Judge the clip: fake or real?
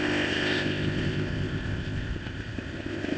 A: fake